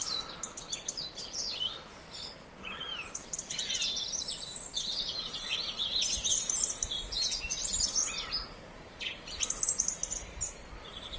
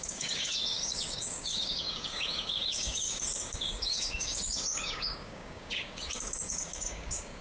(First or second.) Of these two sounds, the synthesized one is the second